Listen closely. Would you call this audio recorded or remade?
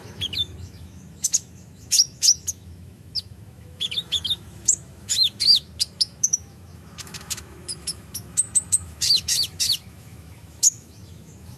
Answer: remade